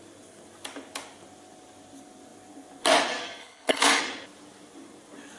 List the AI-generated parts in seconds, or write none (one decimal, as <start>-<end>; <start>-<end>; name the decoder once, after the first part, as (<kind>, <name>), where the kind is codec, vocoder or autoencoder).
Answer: 3.4-4.0 (codec, HILCodec)